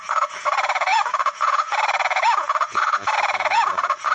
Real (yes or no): no